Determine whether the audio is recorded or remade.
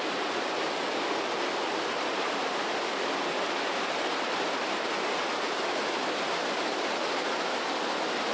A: recorded